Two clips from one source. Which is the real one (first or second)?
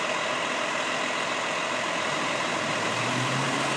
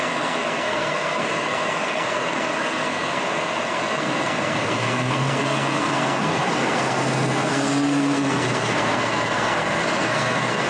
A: first